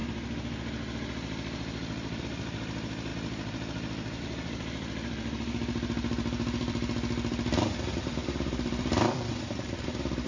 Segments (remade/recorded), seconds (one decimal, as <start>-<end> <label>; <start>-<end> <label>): 0.0-2.2 recorded; 2.2-3.1 remade; 3.1-4.2 recorded; 4.2-10.3 remade